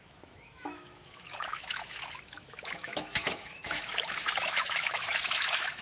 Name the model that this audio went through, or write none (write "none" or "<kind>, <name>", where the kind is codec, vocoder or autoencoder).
autoencoder, DAC-VAE